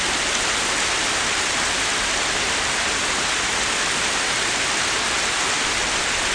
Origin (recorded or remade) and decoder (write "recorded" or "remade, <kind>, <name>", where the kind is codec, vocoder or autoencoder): recorded